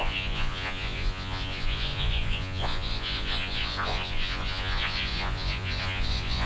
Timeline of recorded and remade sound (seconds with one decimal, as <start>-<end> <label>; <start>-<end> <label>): 0.0-6.5 remade